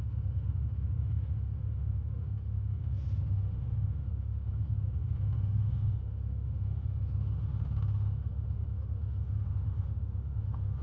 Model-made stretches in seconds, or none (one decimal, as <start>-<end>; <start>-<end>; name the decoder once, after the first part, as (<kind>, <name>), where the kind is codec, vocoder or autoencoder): 0.0-10.8 (autoencoder, DAC-VAE)